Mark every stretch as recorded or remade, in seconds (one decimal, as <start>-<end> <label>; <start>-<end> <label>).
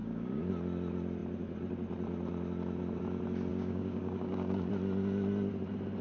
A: 0.0-0.5 remade; 0.5-3.5 recorded; 3.5-4.7 remade; 4.7-6.0 recorded